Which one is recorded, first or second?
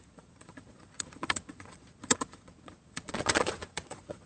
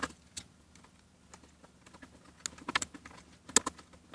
second